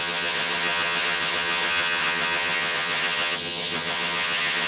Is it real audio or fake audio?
fake